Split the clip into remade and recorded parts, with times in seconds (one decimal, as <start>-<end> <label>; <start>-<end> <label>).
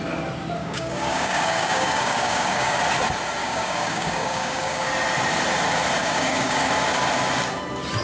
0.0-0.6 recorded; 0.6-2.8 remade; 2.8-3.4 recorded; 3.4-4.9 remade; 4.9-6.0 recorded; 6.0-6.7 remade; 6.7-8.0 recorded